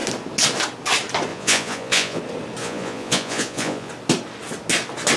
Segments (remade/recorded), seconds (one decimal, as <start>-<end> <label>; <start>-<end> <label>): 0.0-1.3 recorded; 1.3-2.2 remade; 2.2-2.6 recorded; 2.6-3.9 remade; 3.9-5.2 recorded